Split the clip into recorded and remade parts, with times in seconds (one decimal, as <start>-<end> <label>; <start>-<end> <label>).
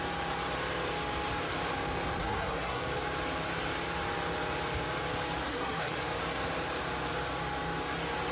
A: 0.0-2.2 recorded; 2.2-2.8 remade; 2.8-5.5 recorded; 5.5-6.0 remade; 6.0-8.3 recorded